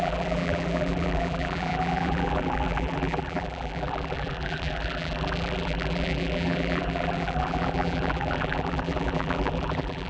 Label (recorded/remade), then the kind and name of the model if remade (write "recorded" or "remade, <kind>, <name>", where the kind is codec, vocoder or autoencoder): remade, vocoder, BigVGAN v2